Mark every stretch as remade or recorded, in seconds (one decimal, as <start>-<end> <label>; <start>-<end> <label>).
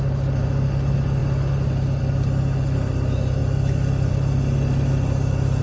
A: 0.0-5.6 recorded